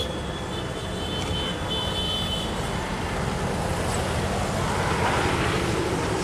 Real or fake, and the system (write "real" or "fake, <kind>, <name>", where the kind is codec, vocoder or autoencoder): real